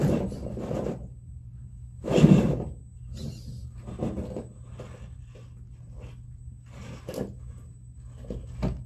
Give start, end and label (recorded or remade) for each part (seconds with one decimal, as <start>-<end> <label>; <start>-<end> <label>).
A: 0.0-8.9 recorded

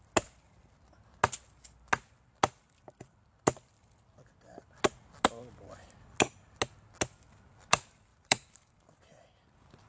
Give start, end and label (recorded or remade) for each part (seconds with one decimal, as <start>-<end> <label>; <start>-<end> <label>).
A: 0.0-8.1 recorded; 8.1-9.0 remade; 9.0-9.9 recorded

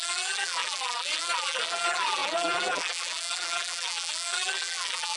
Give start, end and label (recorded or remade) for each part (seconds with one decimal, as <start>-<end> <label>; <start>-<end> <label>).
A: 0.0-5.2 remade

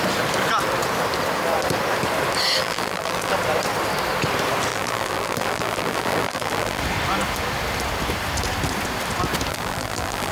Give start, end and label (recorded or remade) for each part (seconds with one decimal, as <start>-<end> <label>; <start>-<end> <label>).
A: 0.0-2.6 recorded; 2.6-3.3 remade; 3.3-4.7 recorded; 4.7-6.8 remade; 6.8-9.5 recorded; 9.5-10.3 remade